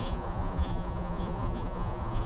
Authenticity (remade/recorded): remade